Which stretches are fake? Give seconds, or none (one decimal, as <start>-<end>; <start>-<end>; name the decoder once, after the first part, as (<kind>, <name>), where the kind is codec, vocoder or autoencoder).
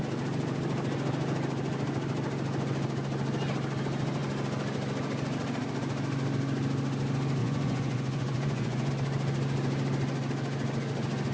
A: 7.4-8.9 (vocoder, Vocos)